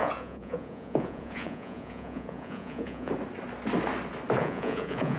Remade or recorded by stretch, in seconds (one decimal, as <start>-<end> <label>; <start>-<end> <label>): 0.0-3.1 remade; 3.1-4.4 recorded; 4.4-5.2 remade